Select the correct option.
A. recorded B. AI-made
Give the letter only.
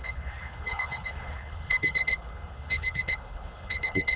B